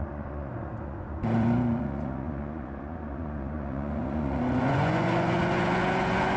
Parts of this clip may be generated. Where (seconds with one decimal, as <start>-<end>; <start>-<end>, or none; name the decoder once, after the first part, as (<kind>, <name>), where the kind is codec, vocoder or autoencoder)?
0.0-6.4 (vocoder, Vocos)